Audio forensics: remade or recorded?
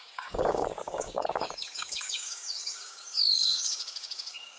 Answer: remade